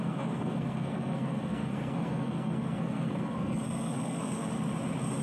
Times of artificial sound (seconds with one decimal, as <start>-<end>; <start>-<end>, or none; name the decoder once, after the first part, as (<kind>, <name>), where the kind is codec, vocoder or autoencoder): 0.0-4.5 (codec, SNAC)